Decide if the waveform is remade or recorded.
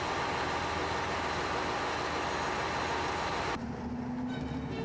recorded